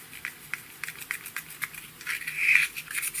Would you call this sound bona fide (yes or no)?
yes